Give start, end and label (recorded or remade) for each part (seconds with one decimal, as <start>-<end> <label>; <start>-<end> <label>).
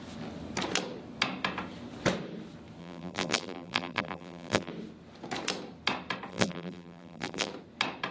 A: 0.0-2.8 recorded; 2.8-4.7 remade; 4.7-6.3 recorded; 6.3-7.5 remade; 7.5-8.1 recorded